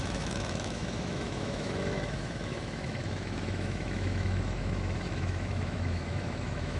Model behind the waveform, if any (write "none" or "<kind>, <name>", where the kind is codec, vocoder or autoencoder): autoencoder, DAC-VAE